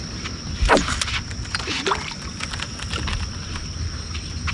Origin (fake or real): real